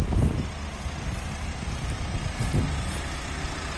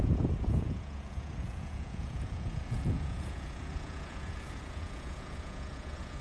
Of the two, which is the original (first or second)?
first